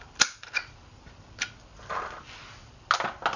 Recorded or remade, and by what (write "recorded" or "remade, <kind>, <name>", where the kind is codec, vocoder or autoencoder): recorded